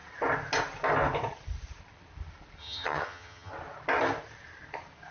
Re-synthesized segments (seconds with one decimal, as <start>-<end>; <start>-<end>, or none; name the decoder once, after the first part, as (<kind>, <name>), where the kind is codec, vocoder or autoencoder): 2.6-3.5 (vocoder, HiFi-GAN)